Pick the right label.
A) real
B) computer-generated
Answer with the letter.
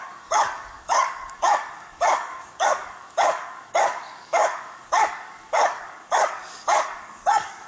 B